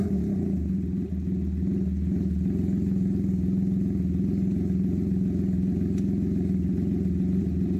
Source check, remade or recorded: recorded